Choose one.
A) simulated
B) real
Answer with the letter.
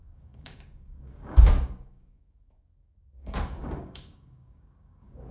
A